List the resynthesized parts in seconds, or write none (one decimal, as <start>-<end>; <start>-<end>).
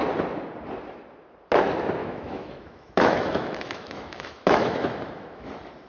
2.0-5.5